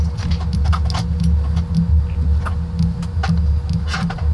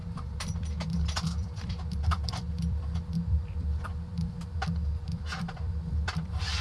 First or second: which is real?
first